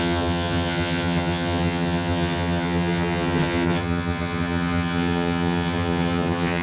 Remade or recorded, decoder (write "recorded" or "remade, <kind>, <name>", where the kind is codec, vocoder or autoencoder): remade, vocoder, HiFi-GAN